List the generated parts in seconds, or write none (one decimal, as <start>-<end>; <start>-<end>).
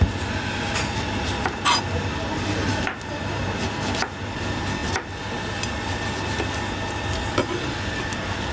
none